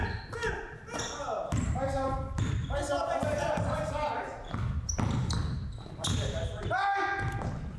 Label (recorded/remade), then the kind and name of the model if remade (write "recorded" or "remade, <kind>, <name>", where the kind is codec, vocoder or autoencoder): recorded